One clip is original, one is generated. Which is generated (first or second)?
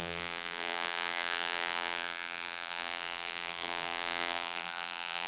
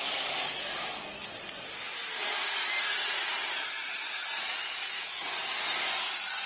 first